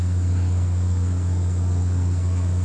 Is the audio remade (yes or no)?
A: yes